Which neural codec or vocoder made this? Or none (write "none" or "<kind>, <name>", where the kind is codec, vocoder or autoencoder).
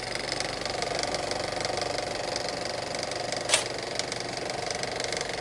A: none